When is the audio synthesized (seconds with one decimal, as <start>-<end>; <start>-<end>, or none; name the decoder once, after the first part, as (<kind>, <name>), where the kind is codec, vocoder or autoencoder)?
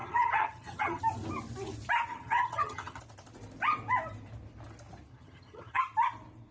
0.0-1.0 (vocoder, HiFi-GAN); 2.1-3.0; 5.1-5.8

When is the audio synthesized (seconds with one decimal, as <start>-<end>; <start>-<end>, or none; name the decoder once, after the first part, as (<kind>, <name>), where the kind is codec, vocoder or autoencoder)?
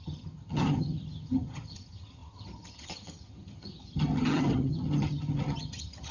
0.0-6.1 (vocoder, HiFi-GAN)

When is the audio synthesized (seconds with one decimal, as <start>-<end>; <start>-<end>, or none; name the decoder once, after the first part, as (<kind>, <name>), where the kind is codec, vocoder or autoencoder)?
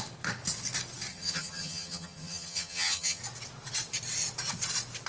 1.1-3.2 (vocoder, HiFi-GAN)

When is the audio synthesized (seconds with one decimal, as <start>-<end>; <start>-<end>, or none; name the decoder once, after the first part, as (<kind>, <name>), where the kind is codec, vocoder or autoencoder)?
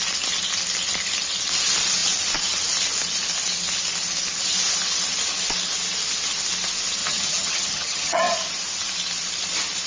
7.0-8.2 (vocoder, HiFi-GAN)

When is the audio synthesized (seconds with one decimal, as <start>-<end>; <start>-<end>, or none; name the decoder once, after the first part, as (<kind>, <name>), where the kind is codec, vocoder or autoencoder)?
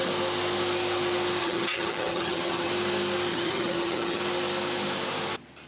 1.4-2.7 (vocoder, HiFi-GAN); 3.3-4.2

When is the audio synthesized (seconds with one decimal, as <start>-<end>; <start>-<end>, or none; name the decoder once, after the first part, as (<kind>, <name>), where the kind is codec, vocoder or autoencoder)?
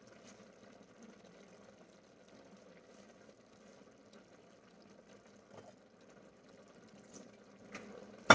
none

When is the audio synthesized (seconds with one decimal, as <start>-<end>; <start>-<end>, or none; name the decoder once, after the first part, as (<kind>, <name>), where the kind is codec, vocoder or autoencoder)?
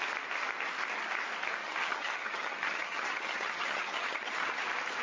1.6-4.6 (vocoder, HiFi-GAN)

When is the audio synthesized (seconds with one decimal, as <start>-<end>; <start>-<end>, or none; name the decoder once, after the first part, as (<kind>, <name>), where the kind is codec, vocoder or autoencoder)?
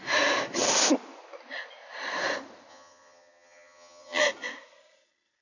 2.7-4.2 (vocoder, HiFi-GAN)